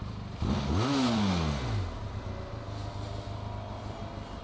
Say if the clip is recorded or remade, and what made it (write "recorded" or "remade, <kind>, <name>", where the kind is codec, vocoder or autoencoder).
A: recorded